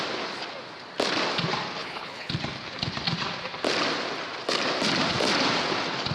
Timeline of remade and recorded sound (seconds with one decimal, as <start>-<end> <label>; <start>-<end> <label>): 0.0-1.8 recorded; 1.8-2.3 remade; 2.3-6.1 recorded